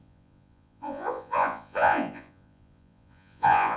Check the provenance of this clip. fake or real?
fake